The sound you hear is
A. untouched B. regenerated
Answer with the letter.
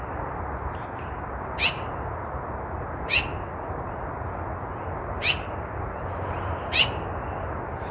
A